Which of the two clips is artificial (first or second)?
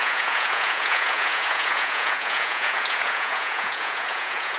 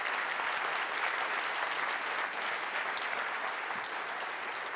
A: first